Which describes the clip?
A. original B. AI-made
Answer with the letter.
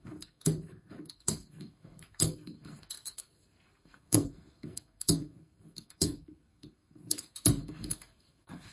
B